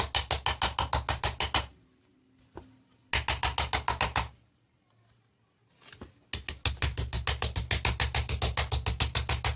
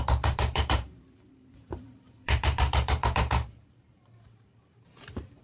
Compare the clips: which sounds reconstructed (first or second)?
second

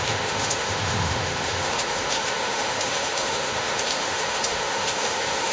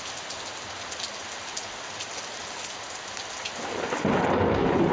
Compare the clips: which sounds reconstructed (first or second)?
first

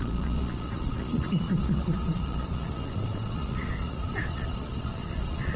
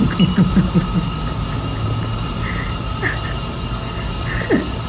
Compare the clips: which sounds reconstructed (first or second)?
first